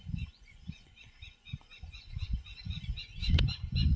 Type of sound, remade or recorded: remade